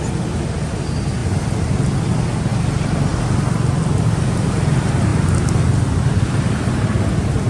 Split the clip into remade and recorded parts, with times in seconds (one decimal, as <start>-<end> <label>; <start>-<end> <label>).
0.0-7.5 recorded